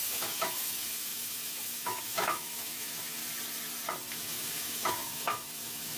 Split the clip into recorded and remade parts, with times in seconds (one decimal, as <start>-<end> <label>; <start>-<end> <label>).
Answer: 0.0-3.2 remade; 3.2-4.1 recorded; 4.1-6.0 remade